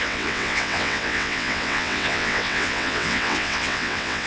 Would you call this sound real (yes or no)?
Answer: no